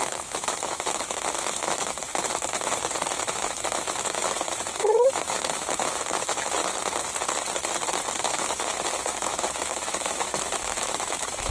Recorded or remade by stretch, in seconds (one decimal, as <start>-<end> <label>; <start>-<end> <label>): 0.0-2.1 remade; 2.1-3.1 recorded; 3.1-6.6 remade; 6.6-8.2 recorded; 8.2-11.5 remade